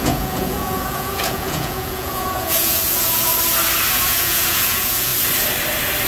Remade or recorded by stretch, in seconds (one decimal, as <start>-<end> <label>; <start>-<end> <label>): 0.0-3.3 remade; 3.3-3.9 recorded; 3.9-5.1 remade; 5.1-6.1 recorded